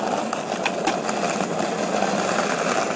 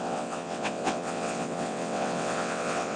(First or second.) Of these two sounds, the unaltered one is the first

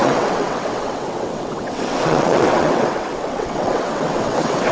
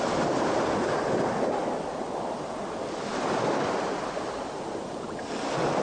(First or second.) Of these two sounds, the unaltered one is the second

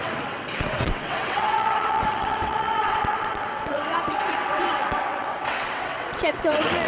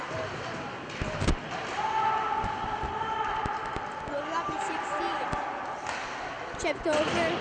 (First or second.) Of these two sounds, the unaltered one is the second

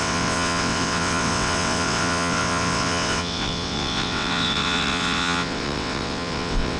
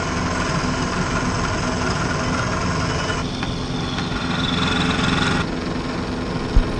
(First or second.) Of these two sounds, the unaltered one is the second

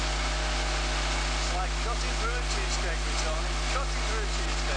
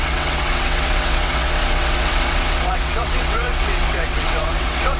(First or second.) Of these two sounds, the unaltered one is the first